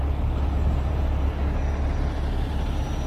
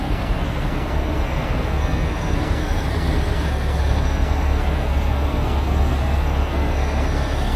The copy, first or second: second